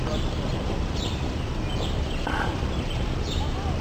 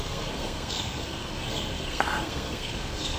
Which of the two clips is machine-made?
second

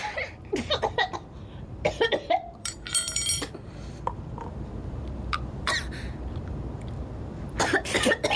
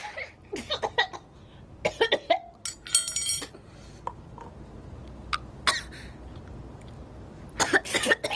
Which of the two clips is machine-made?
first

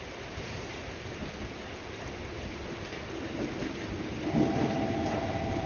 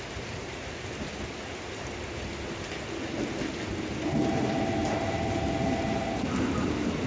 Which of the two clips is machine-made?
first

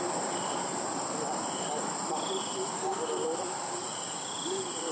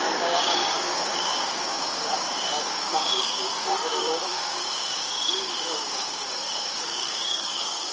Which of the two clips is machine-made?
second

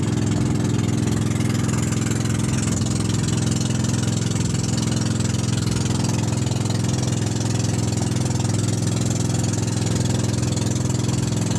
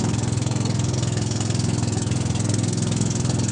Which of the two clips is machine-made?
second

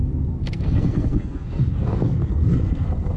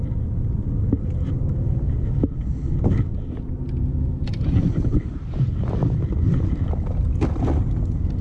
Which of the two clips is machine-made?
first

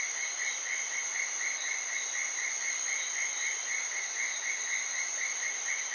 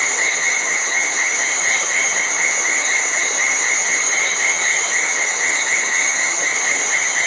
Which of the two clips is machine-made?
second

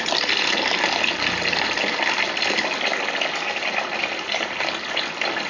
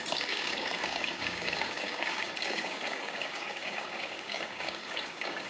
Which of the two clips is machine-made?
second